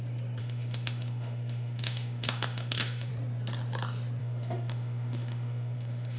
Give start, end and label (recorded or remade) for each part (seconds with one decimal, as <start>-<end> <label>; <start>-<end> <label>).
0.0-0.4 recorded; 0.4-3.1 remade; 3.1-4.2 recorded; 4.2-6.2 remade